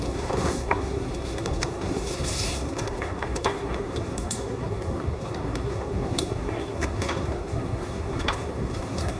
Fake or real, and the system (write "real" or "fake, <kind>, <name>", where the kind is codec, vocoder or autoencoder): fake, codec, SNAC